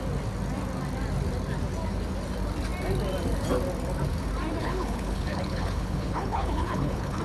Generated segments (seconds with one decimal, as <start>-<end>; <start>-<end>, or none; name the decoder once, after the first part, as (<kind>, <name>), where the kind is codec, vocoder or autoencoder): 4.6-7.2 (codec, HILCodec)